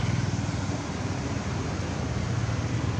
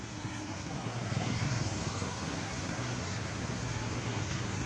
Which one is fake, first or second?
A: second